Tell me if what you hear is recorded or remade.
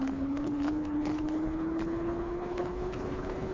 remade